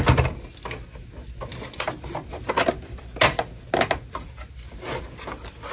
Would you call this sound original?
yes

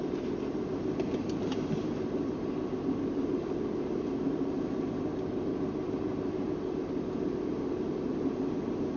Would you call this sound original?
yes